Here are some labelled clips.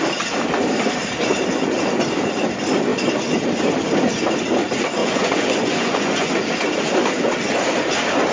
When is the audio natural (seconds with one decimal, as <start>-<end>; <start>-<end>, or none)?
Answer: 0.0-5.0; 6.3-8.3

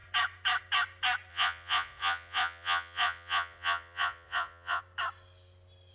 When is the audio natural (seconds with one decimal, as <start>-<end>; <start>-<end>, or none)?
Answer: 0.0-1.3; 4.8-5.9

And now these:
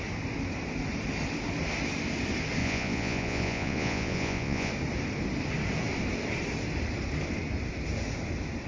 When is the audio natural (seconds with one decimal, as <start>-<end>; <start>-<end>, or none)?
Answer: 0.0-2.6; 4.7-8.7